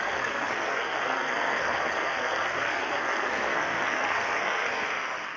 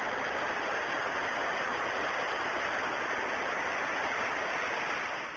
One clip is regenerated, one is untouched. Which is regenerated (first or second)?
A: first